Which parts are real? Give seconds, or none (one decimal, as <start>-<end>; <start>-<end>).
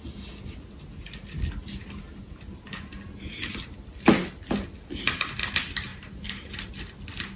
0.0-1.8; 2.4-5.9; 6.6-7.4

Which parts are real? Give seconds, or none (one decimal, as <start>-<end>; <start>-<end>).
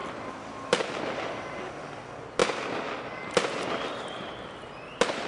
0.0-5.3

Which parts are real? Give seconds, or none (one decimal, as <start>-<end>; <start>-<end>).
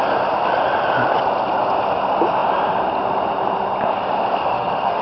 0.0-4.4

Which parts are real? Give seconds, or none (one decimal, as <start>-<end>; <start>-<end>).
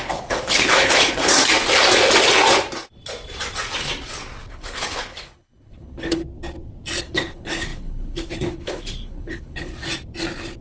1.3-4.5; 6.2-7.0; 9.7-10.6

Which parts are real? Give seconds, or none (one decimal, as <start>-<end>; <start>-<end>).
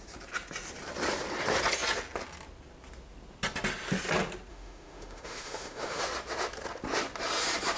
0.0-4.5; 6.0-7.8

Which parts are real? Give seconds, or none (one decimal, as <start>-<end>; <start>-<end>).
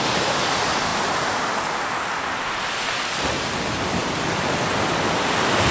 0.0-5.7